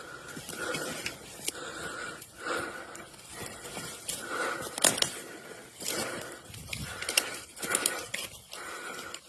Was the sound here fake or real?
fake